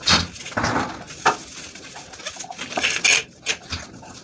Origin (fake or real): real